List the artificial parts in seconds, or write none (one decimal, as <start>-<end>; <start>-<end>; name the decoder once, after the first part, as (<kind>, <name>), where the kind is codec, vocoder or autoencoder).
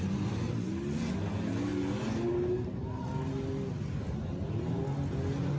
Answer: none